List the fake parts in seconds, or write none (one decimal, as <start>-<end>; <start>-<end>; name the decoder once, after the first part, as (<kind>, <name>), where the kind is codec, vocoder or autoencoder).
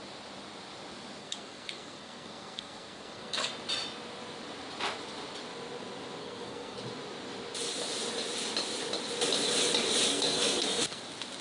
1.2-3.5 (codec, SNAC); 6.2-6.8; 10.1-11.0